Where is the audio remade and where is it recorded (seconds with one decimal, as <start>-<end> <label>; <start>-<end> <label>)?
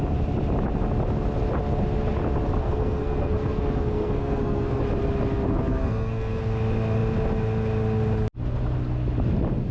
0.0-2.6 recorded; 2.6-4.8 remade; 4.8-5.7 recorded; 5.7-6.4 remade; 6.4-9.7 recorded